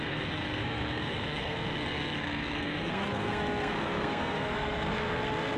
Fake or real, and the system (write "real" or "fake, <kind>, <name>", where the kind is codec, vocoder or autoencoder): fake, codec, SNAC